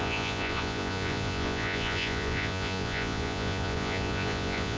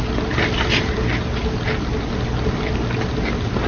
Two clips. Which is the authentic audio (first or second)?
second